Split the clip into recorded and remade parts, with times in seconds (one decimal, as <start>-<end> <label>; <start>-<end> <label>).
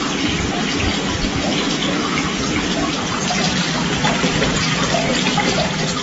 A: 0.0-6.0 recorded